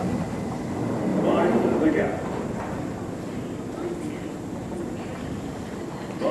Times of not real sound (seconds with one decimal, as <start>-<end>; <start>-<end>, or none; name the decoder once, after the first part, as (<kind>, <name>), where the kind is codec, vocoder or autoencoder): 1.1-1.9 (vocoder, BigVGAN v2); 5.1-5.7